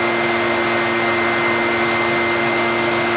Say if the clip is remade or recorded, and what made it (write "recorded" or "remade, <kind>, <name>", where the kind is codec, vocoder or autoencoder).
recorded